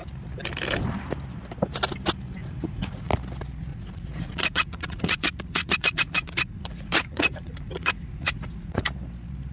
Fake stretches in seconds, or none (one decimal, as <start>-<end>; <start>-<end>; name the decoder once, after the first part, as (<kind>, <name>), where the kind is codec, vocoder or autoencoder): 2.4-3.1 (vocoder, Vocos); 3.7-8.8